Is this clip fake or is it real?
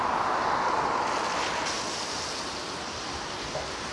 real